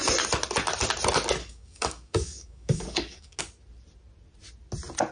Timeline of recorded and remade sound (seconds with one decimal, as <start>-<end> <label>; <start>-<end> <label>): 0.0-1.4 recorded; 1.4-3.4 remade; 3.4-5.1 recorded